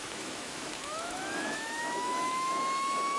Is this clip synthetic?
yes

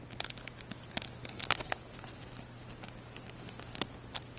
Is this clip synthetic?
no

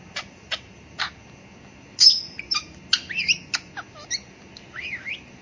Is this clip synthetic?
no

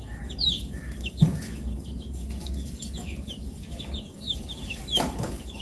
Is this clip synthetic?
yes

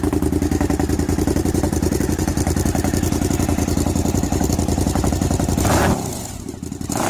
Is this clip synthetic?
no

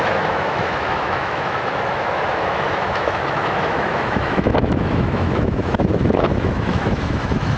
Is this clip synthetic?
yes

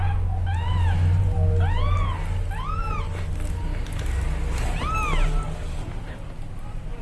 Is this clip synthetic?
no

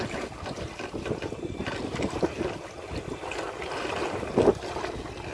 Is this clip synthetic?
no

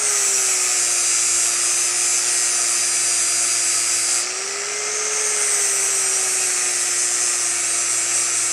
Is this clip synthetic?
no